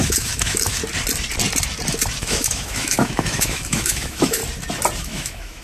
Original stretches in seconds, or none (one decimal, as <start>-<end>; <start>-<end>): 0.8-2.2; 4.4-5.0